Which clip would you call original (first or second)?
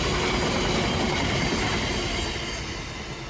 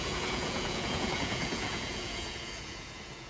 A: first